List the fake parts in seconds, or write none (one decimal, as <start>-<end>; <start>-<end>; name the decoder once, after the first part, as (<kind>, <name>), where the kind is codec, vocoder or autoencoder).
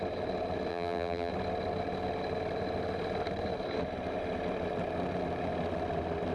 0.7-1.3 (vocoder, BigVGAN v2)